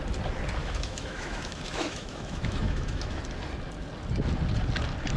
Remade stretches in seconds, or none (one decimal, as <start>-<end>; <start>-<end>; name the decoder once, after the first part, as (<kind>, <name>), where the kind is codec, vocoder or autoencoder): 0.6-3.2 (autoencoder, DAC-VAE)

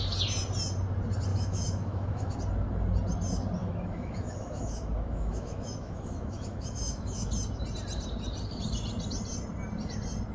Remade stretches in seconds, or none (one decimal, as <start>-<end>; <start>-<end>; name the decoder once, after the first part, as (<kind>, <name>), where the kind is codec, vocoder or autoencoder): 1.3-2.4 (autoencoder, DAC-VAE); 3.6-7.3